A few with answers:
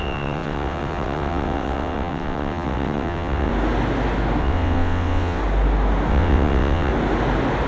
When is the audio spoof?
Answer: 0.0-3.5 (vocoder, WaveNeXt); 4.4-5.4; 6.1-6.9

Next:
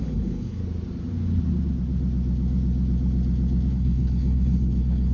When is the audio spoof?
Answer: 0.0-0.6 (codec, HILCodec); 3.7-5.1

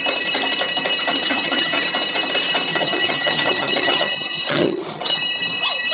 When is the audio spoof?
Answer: 1.1-1.8 (vocoder, HiFi-GAN); 2.7-5.2

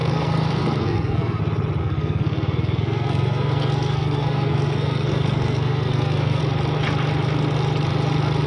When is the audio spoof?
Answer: 0.0-1.4 (codec, SNAC); 1.8-6.4

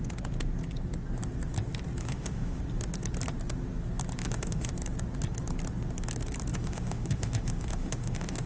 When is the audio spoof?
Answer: 2.0-2.6 (autoencoder, DAC-VAE); 4.2-4.7; 6.5-8.5

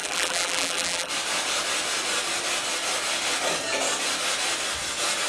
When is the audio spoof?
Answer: 0.0-1.1 (vocoder, BigVGAN v2)